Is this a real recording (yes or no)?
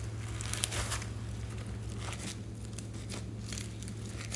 yes